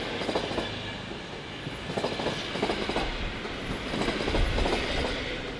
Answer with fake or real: real